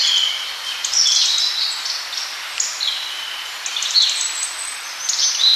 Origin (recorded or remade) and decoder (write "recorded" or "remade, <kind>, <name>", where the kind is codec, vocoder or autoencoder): recorded